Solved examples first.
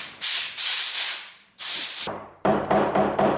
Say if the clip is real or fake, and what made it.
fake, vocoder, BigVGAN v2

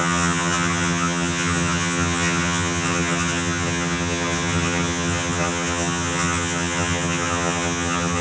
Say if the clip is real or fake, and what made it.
fake, vocoder, HiFi-GAN